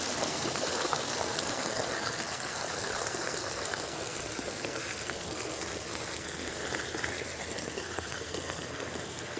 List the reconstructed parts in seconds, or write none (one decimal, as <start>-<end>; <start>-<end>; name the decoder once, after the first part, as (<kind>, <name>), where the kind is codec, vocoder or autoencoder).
0.0-6.6 (codec, SNAC); 7.1-9.4